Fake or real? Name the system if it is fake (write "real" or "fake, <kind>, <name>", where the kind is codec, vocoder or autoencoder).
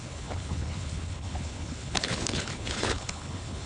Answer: fake, codec, HILCodec